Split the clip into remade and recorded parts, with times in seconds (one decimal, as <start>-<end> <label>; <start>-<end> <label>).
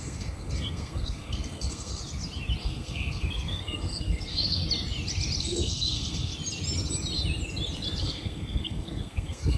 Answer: 0.0-2.0 remade; 2.0-2.6 recorded; 2.6-4.6 remade; 4.6-5.4 recorded; 5.4-6.3 remade; 6.3-8.0 recorded; 8.0-9.6 remade